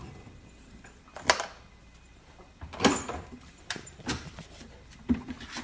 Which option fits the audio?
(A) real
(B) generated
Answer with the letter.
B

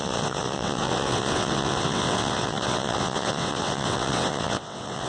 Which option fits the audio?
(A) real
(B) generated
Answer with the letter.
B